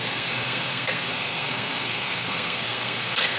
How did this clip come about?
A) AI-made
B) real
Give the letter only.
A